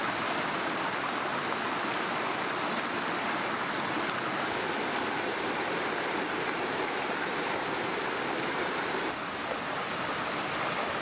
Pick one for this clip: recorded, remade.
remade